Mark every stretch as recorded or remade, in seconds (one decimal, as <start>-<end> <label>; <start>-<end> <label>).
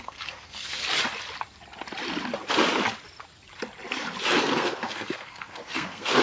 0.0-0.8 remade; 0.8-4.4 recorded; 4.4-6.2 remade